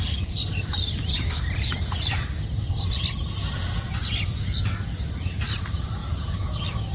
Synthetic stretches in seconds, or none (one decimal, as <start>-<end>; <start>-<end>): 6.0-6.5